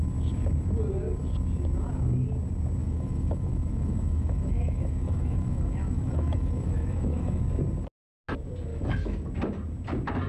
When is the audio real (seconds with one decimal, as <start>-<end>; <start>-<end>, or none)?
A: 0.0-2.8; 7.4-8.7; 9.3-10.3